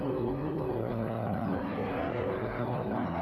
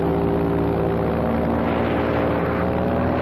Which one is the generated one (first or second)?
first